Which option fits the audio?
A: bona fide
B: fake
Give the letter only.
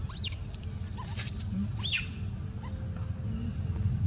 A